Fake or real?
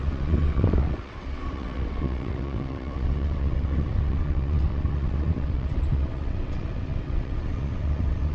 fake